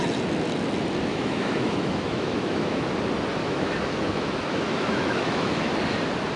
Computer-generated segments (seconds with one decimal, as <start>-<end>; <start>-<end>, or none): 1.1-2.9; 3.4-5.7